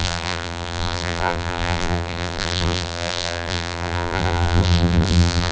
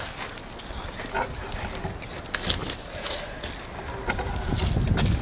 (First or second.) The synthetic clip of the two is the first